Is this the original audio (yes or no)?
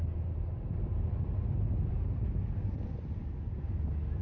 yes